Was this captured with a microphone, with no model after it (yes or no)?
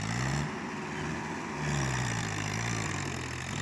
yes